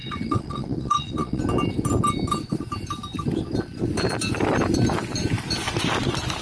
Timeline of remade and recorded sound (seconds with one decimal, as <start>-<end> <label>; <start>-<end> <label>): 0.0-1.4 remade; 1.4-6.4 recorded